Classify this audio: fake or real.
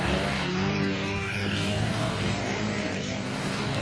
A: fake